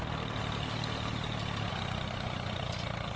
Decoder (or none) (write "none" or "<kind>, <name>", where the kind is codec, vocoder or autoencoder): none